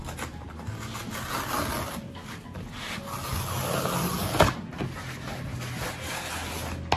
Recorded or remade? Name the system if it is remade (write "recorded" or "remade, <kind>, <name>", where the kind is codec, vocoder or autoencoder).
recorded